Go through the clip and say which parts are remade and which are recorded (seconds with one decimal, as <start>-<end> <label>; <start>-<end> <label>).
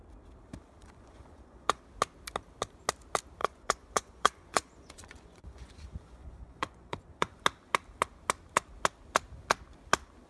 0.0-0.8 recorded; 0.8-1.8 remade; 1.8-3.4 recorded; 3.4-7.4 remade; 7.4-10.3 recorded